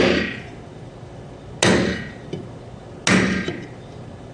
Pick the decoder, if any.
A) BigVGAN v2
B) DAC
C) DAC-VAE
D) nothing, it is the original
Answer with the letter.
D